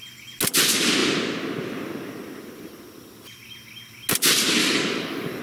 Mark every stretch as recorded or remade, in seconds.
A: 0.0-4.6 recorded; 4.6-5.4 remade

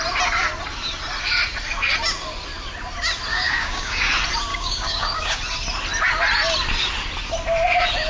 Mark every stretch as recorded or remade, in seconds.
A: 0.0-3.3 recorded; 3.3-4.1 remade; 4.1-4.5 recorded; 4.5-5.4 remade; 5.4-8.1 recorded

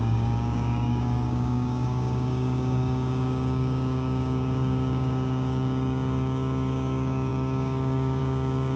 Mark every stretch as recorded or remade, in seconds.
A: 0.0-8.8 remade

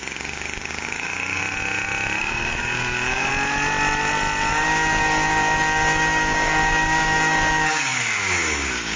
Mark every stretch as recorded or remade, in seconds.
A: 0.0-1.4 remade; 1.4-2.2 recorded; 2.2-3.3 remade; 3.3-4.5 recorded; 4.5-9.0 remade

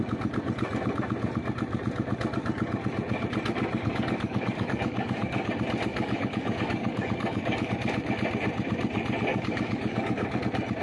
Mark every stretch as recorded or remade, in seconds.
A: 0.0-3.7 recorded; 3.7-5.5 remade; 5.5-5.9 recorded; 5.9-7.7 remade; 7.7-9.3 recorded; 9.3-10.4 remade; 10.4-10.8 recorded